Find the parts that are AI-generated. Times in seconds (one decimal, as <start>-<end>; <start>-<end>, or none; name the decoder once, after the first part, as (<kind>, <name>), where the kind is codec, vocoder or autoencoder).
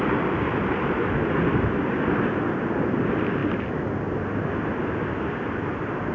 none